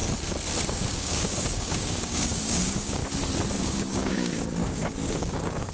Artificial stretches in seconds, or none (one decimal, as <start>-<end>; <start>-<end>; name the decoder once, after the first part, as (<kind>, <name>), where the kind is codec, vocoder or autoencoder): 0.7-3.0 (codec, DAC); 3.6-5.7